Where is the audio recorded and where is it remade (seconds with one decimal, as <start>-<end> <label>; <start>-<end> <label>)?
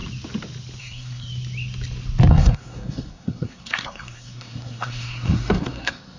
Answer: 0.0-0.8 recorded; 0.8-1.3 remade; 1.3-2.3 recorded; 2.3-6.2 remade